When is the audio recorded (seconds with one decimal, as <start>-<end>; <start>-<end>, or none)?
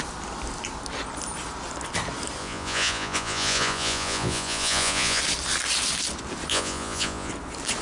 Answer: 0.0-2.4; 5.2-6.5; 7.3-7.8